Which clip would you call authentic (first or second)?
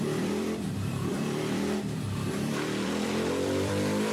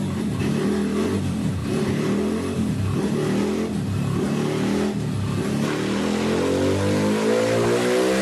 second